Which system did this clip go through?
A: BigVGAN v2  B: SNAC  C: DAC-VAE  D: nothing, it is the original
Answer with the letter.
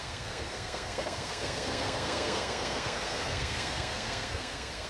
B